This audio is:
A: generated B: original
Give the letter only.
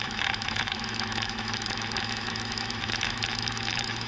A